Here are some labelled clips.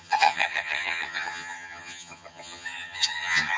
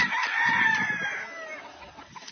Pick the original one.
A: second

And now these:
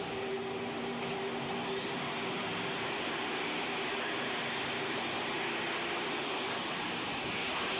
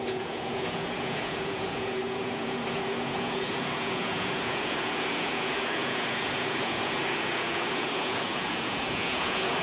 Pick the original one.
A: first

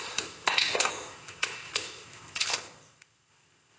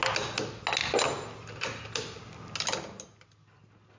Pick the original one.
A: second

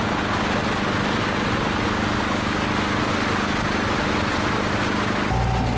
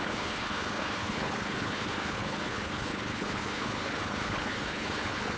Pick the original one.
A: first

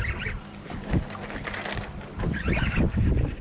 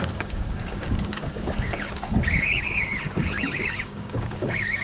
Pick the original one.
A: first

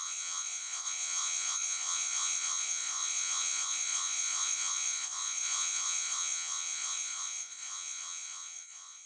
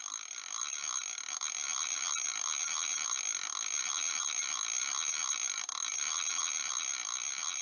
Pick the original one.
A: second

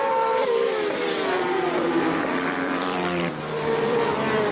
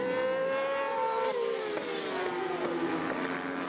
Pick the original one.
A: second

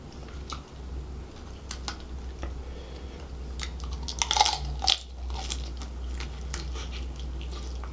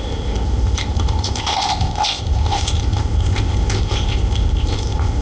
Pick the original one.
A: first